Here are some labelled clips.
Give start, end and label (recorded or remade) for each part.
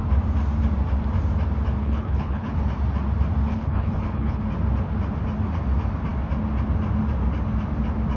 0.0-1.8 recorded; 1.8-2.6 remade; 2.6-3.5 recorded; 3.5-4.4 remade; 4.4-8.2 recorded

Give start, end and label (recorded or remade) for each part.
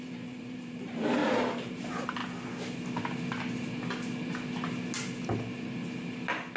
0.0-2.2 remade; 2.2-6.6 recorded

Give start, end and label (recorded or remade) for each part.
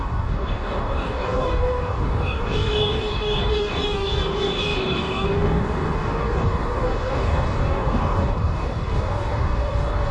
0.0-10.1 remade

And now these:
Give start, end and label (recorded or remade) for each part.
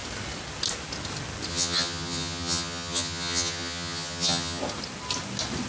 0.0-1.5 recorded; 1.5-4.6 remade; 4.6-5.7 recorded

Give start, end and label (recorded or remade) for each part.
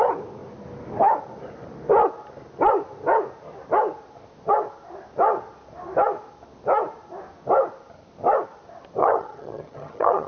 0.0-9.0 recorded; 9.0-10.3 remade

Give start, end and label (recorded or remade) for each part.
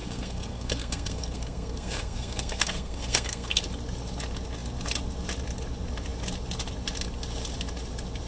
0.0-3.6 remade; 3.6-8.3 recorded